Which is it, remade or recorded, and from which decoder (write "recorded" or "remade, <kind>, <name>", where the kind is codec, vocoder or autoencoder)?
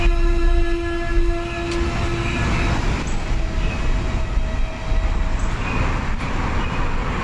recorded